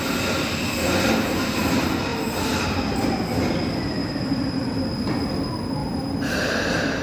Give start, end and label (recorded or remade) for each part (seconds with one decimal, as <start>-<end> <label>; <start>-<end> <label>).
0.0-2.1 recorded; 2.1-2.6 remade; 2.6-4.0 recorded; 4.0-4.8 remade; 4.8-5.8 recorded; 5.8-6.6 remade; 6.6-7.0 recorded